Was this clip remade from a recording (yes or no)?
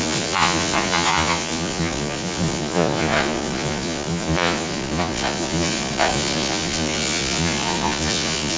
yes